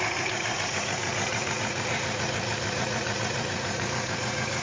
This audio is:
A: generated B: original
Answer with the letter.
A